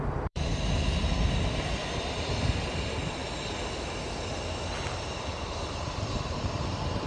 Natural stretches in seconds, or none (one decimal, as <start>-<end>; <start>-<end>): 0.5-2.4; 3.2-5.4